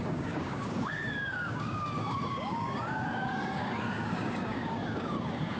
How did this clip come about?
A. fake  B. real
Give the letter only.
A